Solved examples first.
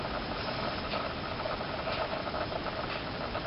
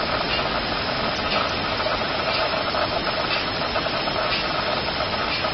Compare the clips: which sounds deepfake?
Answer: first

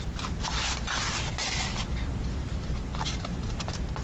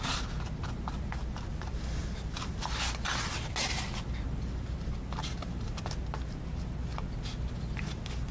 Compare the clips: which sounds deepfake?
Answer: first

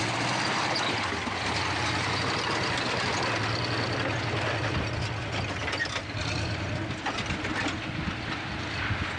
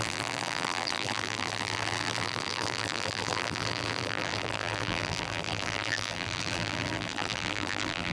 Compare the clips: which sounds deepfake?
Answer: second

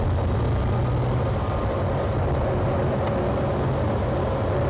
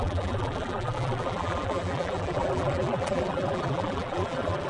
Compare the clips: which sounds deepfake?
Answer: second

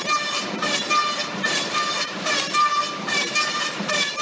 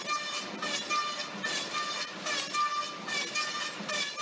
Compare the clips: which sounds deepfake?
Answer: first